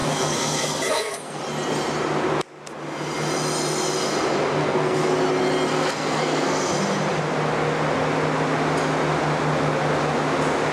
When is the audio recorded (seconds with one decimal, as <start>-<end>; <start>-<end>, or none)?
1.4-4.6; 5.1-5.7; 6.7-10.7